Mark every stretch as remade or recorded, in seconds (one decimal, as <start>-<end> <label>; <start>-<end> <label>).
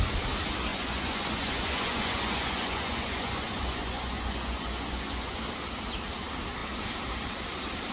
0.0-0.7 recorded; 0.7-5.4 remade; 5.4-7.9 recorded